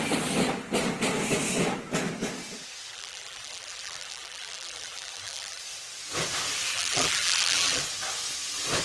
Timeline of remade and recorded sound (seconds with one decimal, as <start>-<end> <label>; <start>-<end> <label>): 0.0-2.9 recorded; 2.9-5.6 remade; 5.6-6.7 recorded; 6.7-7.8 remade; 7.8-8.8 recorded